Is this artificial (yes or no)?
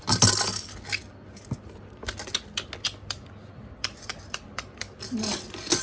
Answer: no